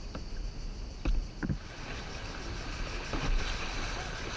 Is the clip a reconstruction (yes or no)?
no